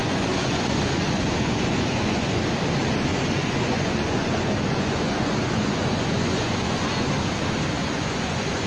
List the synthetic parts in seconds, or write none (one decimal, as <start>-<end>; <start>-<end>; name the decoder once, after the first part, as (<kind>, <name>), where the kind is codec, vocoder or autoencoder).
0.0-2.4 (vocoder, Vocos); 3.1-7.0; 7.8-8.7